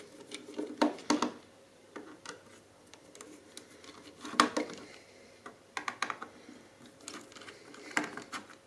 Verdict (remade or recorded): recorded